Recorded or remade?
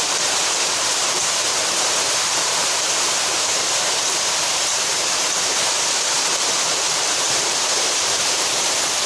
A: remade